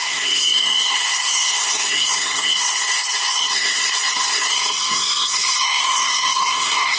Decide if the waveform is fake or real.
fake